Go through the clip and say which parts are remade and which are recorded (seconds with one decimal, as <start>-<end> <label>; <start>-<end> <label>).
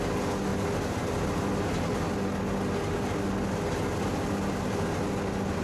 0.0-5.6 recorded